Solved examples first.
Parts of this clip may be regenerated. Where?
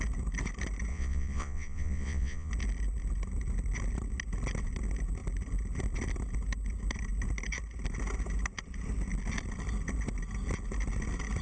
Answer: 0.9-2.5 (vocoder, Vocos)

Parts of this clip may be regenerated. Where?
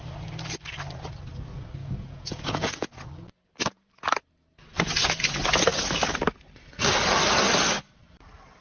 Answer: 1.8-2.9 (vocoder, Vocos)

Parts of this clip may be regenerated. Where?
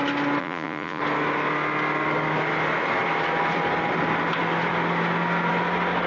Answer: 0.4-1.0 (vocoder, Vocos)